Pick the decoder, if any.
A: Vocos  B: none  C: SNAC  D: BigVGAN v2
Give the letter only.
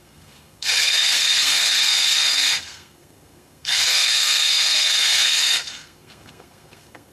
C